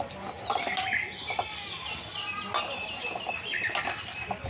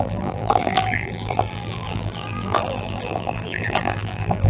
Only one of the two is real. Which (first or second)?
first